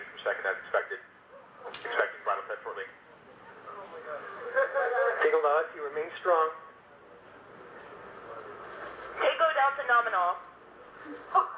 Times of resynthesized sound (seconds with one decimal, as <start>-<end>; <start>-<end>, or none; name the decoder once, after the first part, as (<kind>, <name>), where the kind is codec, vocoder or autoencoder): 3.9-5.6 (autoencoder, DAC-VAE)